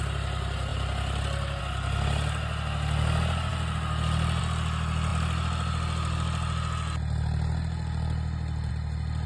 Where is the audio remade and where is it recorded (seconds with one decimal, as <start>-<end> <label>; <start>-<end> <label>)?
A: 0.0-9.3 recorded

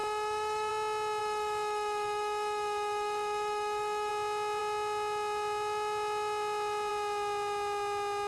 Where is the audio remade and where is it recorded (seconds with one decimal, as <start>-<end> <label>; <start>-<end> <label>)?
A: 0.0-0.7 remade; 0.7-1.2 recorded; 1.2-4.1 remade; 4.1-8.3 recorded

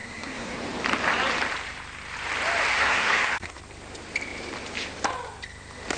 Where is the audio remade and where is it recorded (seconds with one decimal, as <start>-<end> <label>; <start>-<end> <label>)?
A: 0.0-0.6 remade; 0.6-2.7 recorded; 2.7-3.6 remade; 3.6-6.0 recorded

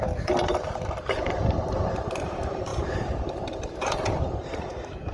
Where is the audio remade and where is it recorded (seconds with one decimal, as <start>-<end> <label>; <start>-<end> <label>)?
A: 0.0-5.1 remade

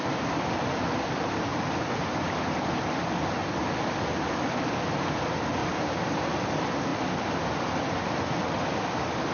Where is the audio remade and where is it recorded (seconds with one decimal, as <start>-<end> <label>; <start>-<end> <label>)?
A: 0.0-5.6 recorded; 5.6-6.1 remade; 6.1-9.3 recorded

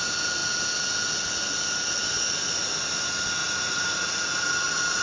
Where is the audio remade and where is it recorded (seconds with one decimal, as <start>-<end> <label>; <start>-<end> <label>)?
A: 0.0-3.4 recorded; 3.4-5.0 remade